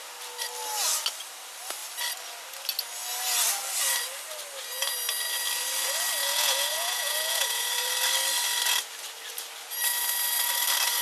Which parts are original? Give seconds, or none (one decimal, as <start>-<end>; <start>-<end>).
0.0-6.2; 7.7-11.0